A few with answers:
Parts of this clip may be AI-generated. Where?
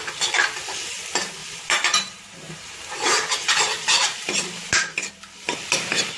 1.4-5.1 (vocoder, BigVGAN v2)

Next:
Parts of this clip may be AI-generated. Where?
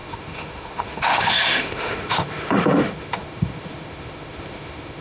0.0-5.0 (autoencoder, DAC-VAE)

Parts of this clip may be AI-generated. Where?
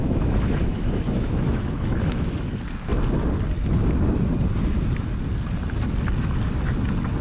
0.0-2.5 (autoencoder, DAC-VAE)